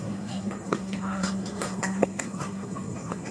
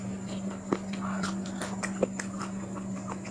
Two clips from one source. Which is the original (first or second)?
second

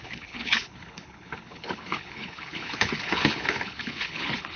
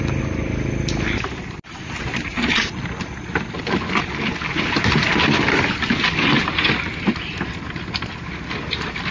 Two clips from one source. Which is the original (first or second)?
second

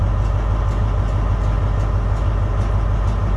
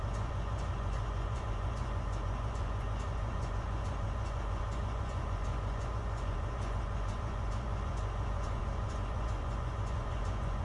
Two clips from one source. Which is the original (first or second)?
first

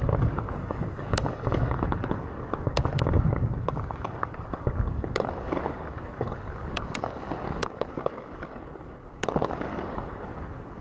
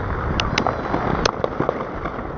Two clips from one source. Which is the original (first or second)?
second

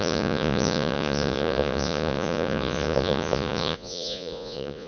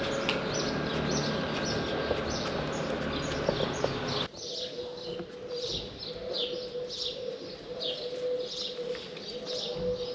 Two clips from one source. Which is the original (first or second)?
second